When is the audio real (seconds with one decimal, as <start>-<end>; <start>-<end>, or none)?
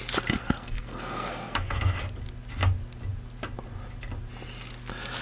0.0-0.4; 2.0-5.2